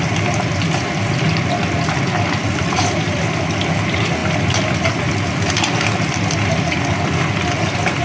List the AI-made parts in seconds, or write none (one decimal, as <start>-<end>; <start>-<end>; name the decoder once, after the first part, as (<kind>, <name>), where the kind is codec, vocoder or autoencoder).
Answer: none